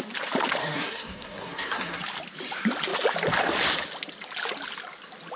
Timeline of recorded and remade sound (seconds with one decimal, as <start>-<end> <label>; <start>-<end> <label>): 0.0-0.6 recorded; 0.6-2.0 remade; 2.0-5.4 recorded